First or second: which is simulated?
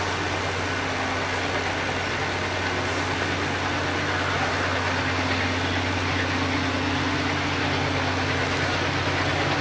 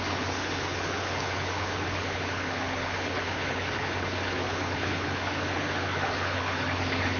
second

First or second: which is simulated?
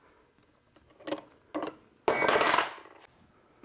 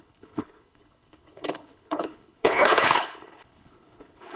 second